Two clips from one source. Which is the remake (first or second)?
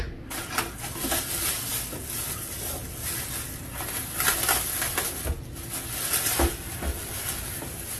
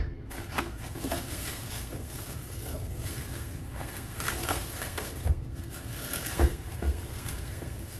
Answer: second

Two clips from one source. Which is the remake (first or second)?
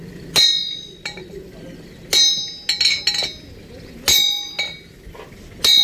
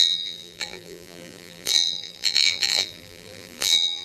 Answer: second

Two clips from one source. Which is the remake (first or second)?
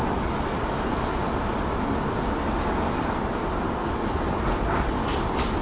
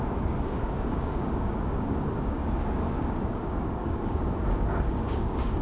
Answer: second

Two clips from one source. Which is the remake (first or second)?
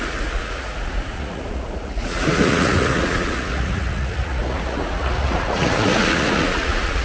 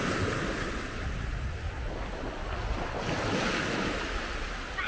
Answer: first